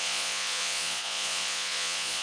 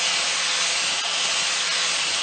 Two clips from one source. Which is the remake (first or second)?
first